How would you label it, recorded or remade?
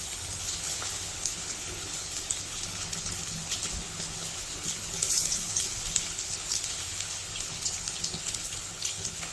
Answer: remade